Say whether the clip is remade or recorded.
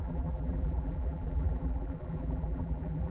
remade